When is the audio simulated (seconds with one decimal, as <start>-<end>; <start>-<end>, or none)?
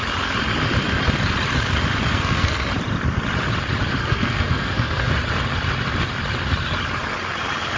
2.1-2.7; 4.0-5.1